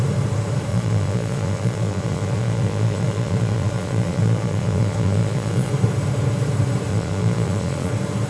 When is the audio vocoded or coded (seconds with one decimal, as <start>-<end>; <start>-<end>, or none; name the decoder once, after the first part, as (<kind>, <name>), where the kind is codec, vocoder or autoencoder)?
0.7-5.7 (vocoder, Vocos); 6.9-7.9